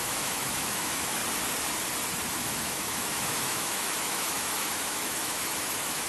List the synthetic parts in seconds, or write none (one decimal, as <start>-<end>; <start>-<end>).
0.0-1.2; 2.3-6.1